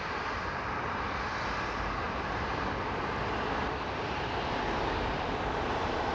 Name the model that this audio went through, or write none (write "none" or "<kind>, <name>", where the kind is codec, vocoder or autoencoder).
vocoder, BigVGAN v2